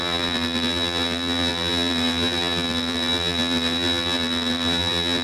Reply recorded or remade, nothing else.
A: remade